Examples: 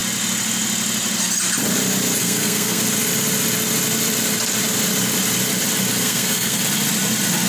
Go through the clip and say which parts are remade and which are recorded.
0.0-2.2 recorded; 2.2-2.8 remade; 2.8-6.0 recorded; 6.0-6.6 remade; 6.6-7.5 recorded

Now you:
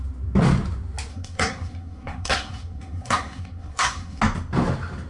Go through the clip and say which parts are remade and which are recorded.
0.0-1.1 recorded; 1.1-4.2 remade; 4.2-5.1 recorded

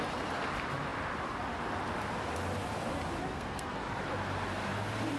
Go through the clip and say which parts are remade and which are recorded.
0.0-3.3 recorded; 3.3-3.8 remade; 3.8-5.2 recorded

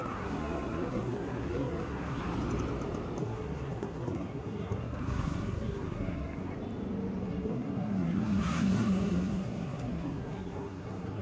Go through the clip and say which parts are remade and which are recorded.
0.0-2.2 remade; 2.2-3.2 recorded; 3.2-6.5 remade; 6.5-7.2 recorded; 7.2-11.2 remade